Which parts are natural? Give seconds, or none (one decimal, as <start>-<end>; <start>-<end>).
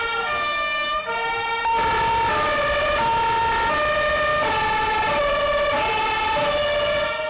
0.0-2.3